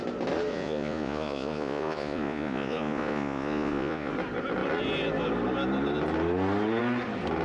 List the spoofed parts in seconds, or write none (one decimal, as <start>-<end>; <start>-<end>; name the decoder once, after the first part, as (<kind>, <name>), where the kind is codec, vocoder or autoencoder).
0.5-4.1 (vocoder, Vocos)